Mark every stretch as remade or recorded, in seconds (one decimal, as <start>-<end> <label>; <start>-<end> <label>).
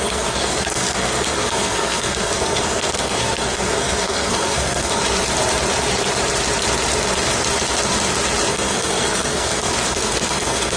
0.0-5.0 remade; 5.0-8.5 recorded; 8.5-10.8 remade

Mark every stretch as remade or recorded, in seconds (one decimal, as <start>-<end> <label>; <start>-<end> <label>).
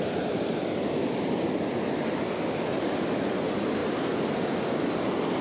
0.0-5.4 recorded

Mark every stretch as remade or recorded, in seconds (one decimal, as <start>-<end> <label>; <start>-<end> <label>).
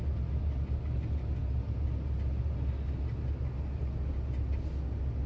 0.0-5.3 recorded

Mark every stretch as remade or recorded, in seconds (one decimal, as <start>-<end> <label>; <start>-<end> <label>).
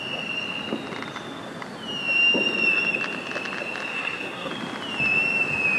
0.0-3.9 recorded; 3.9-4.5 remade; 4.5-5.8 recorded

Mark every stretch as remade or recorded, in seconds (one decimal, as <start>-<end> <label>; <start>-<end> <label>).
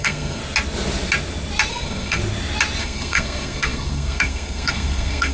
0.0-0.4 remade; 0.4-1.7 recorded; 1.7-2.2 remade; 2.2-2.8 recorded; 2.8-5.3 remade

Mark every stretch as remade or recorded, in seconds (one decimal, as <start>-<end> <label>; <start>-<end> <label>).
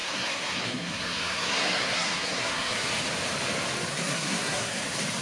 0.0-2.9 remade; 2.9-3.9 recorded; 3.9-4.8 remade; 4.8-5.2 recorded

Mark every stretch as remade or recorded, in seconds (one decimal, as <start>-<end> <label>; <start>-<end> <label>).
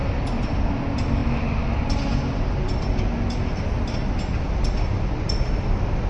0.0-6.1 recorded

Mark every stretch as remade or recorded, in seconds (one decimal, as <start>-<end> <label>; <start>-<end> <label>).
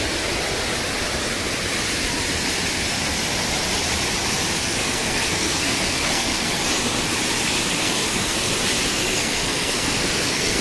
0.0-4.6 recorded; 4.6-6.6 remade; 6.6-7.8 recorded; 7.8-8.5 remade; 8.5-8.9 recorded; 8.9-10.6 remade